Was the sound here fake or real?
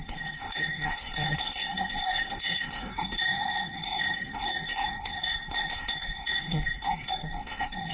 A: fake